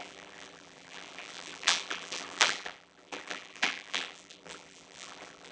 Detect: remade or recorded remade